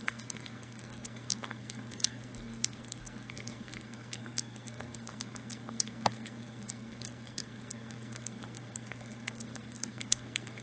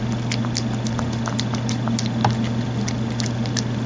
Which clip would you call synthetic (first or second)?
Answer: first